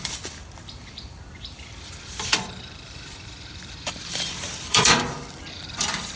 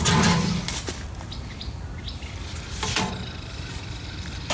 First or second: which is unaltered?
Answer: second